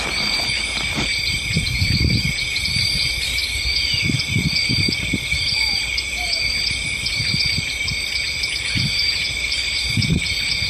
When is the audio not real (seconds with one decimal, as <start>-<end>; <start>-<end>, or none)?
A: 0.0-3.4; 7.1-10.7